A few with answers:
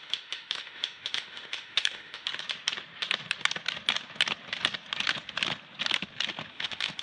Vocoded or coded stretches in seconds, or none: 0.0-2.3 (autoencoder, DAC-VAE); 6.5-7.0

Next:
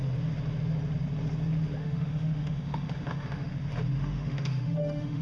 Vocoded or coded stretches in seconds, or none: 1.8-3.5 (autoencoder, DAC-VAE); 3.9-5.2

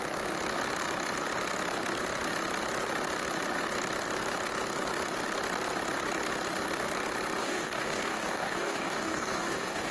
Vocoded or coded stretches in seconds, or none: 7.4-9.9 (codec, DAC)

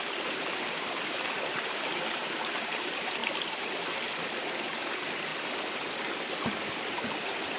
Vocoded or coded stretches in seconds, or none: 0.0-3.2 (vocoder, BigVGAN v2); 4.4-5.3; 6.1-7.6